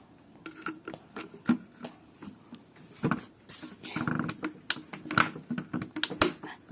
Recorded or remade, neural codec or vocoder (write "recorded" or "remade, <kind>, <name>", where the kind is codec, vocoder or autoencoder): recorded